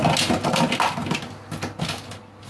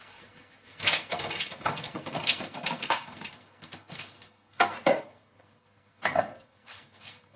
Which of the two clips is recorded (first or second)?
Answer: first